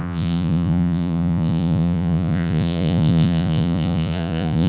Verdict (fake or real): fake